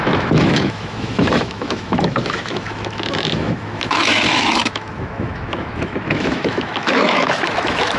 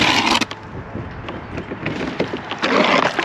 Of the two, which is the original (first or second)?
second